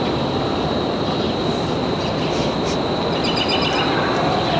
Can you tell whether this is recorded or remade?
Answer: recorded